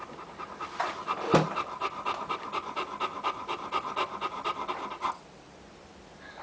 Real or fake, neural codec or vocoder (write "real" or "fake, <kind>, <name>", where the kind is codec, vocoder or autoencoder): real